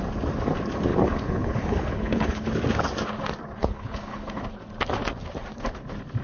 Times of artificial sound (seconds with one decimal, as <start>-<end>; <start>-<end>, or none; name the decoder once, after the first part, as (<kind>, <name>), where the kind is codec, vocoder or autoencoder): 0.9-2.5 (codec, HILCodec); 3.6-4.4